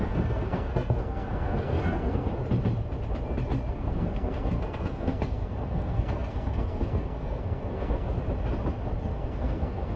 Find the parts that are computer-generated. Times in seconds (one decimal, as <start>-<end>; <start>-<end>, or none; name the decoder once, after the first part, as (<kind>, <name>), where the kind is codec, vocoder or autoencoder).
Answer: 0.0-2.3 (codec, SNAC); 3.7-8.2; 9.0-10.0